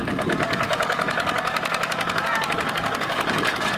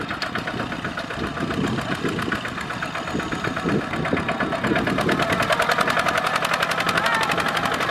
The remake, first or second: first